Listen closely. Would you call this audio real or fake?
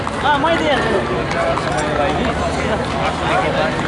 real